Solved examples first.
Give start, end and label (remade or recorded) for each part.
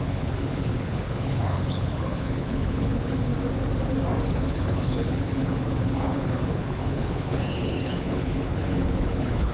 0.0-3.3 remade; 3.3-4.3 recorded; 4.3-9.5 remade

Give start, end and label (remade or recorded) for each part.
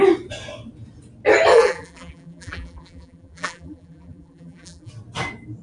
0.0-1.5 recorded; 1.5-4.9 remade; 4.9-5.6 recorded